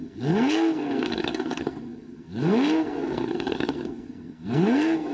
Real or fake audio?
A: fake